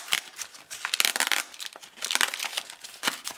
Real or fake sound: real